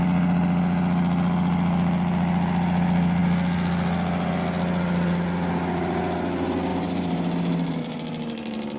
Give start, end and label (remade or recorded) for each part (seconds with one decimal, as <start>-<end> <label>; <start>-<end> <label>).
0.0-6.7 recorded; 6.7-7.8 remade; 7.8-8.8 recorded